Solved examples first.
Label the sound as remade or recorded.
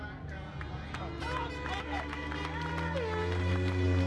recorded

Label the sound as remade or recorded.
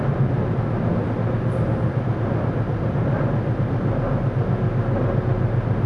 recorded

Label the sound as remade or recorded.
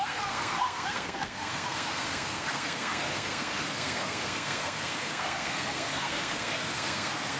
remade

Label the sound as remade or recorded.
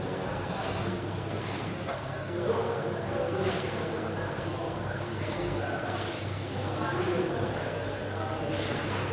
remade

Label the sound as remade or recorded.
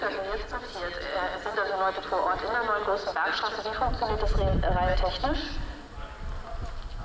recorded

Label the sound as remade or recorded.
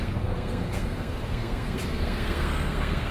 remade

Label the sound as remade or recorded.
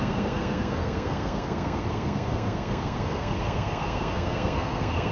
remade